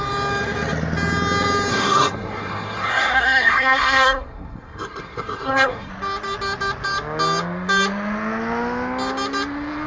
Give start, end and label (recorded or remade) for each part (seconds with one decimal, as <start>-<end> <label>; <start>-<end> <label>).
0.0-1.7 recorded; 1.7-5.9 remade; 5.9-9.9 recorded

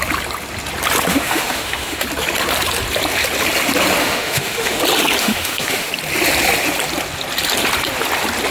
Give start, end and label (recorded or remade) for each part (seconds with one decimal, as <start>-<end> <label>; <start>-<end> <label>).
0.0-1.1 recorded; 1.1-2.0 remade; 2.0-4.0 recorded; 4.0-4.8 remade; 4.8-5.2 recorded; 5.2-5.9 remade; 5.9-8.5 recorded